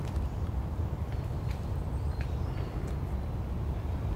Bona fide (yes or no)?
yes